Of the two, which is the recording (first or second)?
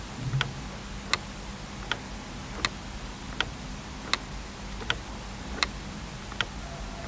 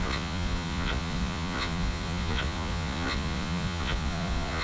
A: first